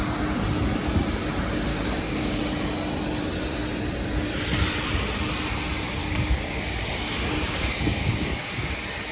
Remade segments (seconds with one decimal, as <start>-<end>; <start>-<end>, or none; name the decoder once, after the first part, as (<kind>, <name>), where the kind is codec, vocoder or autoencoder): 1.7-2.3 (codec, DAC); 6.0-8.7